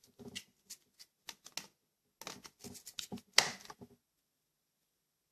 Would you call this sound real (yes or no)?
yes